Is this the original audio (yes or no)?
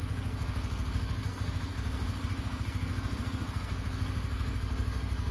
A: no